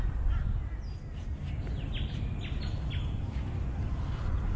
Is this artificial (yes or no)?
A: no